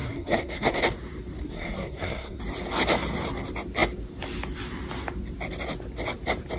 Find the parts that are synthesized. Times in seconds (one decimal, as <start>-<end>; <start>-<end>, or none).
0.0-0.8; 1.4-2.4